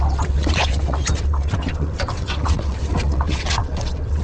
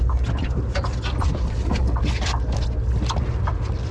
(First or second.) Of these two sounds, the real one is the second